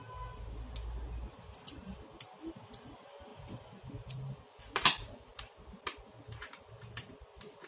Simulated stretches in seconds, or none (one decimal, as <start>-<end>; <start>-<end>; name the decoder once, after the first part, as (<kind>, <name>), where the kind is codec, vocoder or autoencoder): none